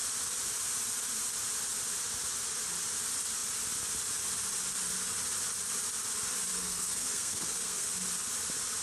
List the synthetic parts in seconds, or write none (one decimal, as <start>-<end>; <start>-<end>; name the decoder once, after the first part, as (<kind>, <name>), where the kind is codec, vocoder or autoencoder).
6.5-7.9 (codec, SNAC)